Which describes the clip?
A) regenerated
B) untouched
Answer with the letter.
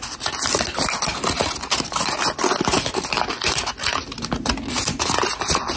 B